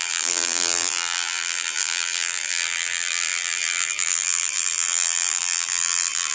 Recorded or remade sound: remade